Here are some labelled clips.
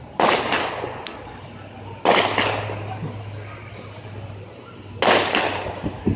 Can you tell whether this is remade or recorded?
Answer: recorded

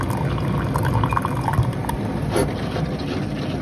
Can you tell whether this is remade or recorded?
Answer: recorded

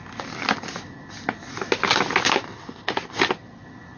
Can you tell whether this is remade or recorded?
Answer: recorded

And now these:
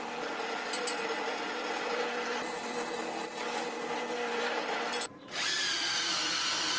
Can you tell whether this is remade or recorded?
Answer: remade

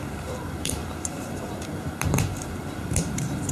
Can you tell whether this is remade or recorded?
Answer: remade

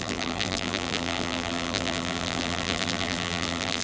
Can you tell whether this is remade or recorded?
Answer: remade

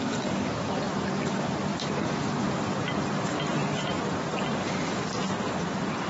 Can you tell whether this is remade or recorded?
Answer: recorded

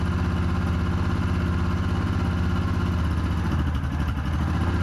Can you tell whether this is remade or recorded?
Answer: recorded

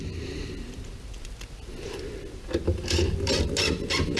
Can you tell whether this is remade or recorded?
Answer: recorded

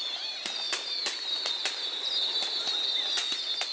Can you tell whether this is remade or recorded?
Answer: recorded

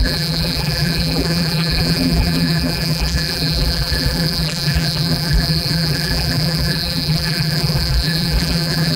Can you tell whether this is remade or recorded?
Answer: remade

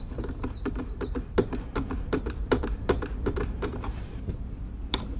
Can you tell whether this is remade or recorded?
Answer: remade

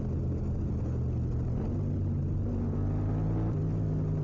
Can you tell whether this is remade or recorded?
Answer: recorded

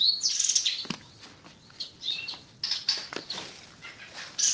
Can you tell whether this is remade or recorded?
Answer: recorded